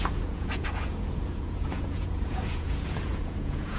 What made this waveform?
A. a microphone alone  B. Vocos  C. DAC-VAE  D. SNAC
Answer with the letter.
B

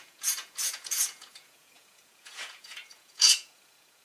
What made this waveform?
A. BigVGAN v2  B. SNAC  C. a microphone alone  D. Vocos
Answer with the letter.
D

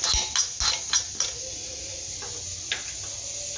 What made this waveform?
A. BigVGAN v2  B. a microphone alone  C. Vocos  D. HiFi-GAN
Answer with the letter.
B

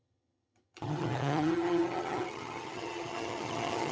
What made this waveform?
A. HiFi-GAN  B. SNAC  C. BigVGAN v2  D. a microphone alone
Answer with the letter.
A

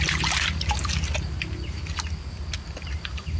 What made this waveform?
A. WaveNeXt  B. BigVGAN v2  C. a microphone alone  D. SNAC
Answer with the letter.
C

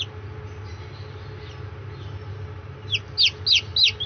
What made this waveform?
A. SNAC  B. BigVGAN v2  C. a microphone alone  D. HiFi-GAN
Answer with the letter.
C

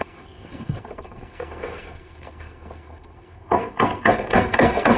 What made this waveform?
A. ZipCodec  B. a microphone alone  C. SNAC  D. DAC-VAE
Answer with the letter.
C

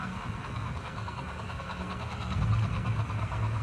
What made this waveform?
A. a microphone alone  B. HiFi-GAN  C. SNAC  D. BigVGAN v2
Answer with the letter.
C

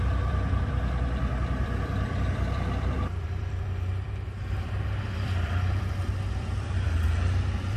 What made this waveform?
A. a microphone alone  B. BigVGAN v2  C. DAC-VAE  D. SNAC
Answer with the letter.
B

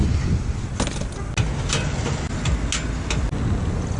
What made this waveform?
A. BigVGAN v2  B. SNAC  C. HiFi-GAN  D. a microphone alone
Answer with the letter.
D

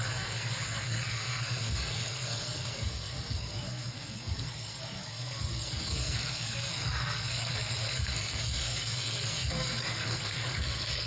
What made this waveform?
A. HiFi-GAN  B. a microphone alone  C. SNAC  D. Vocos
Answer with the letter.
C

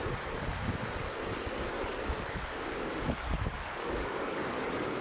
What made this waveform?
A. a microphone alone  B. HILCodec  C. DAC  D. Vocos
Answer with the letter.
C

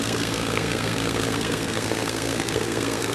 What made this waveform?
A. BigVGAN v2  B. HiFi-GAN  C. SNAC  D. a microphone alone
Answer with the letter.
C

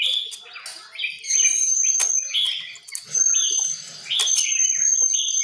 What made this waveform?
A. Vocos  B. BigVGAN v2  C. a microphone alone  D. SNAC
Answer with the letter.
C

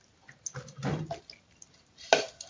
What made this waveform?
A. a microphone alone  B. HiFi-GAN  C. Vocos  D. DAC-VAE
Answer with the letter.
A